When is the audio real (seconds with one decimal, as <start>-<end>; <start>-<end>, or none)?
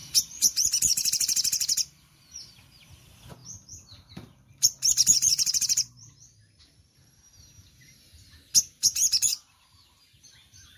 2.2-3.4; 8.1-9.0; 10.0-10.8